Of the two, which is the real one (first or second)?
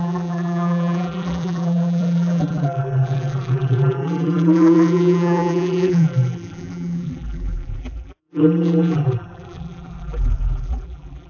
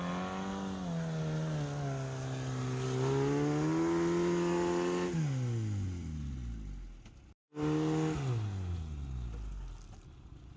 second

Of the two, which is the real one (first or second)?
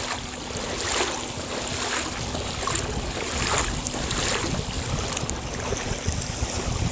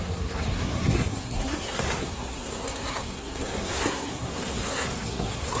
first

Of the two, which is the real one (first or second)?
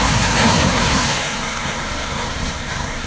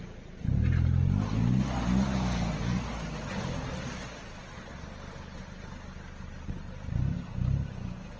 second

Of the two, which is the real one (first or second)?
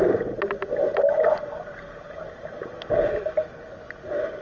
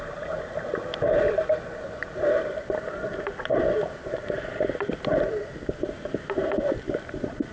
first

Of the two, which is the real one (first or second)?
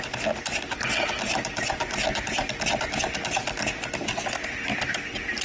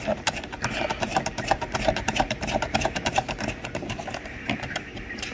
first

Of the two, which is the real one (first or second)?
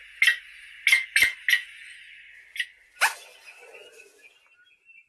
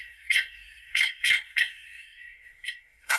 first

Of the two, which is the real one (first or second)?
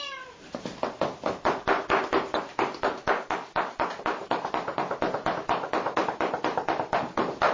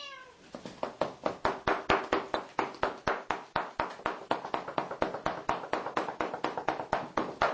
second